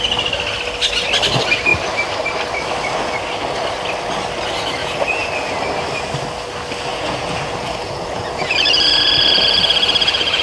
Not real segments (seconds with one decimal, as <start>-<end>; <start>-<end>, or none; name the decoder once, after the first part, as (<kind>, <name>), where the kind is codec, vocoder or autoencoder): 4.8-5.3 (vocoder, Vocos); 6.9-10.4

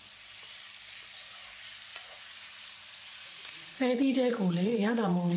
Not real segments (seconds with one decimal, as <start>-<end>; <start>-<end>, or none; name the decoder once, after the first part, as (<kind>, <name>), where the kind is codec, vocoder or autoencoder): 1.9-5.4 (vocoder, Vocos)

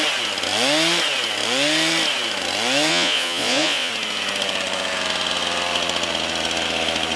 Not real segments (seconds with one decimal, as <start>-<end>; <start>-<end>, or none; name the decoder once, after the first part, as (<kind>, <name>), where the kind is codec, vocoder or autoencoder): 2.9-3.9 (vocoder, Vocos)